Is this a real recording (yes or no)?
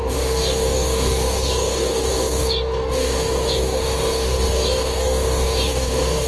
no